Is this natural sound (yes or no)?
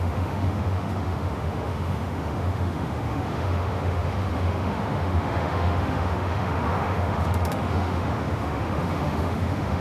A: no